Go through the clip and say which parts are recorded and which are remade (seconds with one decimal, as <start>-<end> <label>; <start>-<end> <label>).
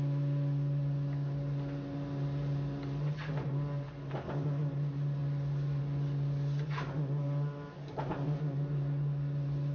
0.0-9.7 recorded